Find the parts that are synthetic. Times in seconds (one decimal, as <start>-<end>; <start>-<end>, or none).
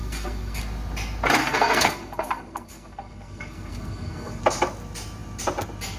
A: 0.0-0.6; 1.4-4.4